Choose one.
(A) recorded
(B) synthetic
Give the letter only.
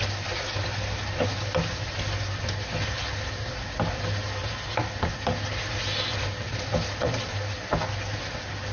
A